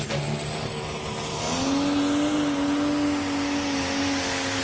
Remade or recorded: recorded